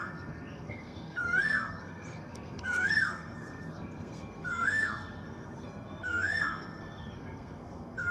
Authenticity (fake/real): fake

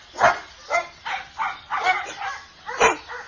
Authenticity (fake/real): real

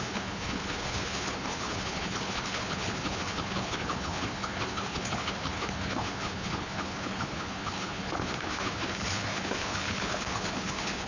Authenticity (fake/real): fake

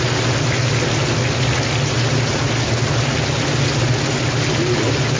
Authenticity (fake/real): real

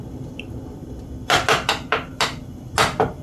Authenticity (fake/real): real